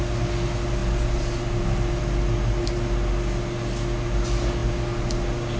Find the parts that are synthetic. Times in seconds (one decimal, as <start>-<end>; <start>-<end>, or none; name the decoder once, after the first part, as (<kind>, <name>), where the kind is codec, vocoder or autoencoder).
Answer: none